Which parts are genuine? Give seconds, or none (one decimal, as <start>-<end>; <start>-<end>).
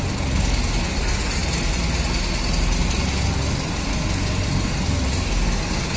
0.0-6.0